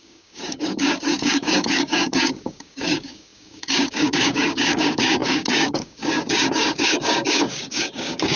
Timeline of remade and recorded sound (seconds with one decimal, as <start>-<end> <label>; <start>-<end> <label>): 0.0-8.4 remade